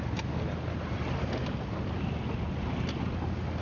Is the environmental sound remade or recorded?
recorded